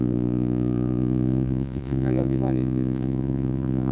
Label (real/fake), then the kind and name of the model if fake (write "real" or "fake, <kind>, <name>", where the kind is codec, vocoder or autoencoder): fake, vocoder, Vocos